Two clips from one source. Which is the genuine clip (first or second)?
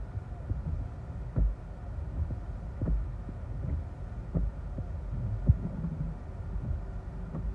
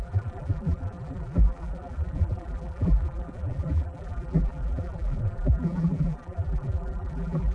first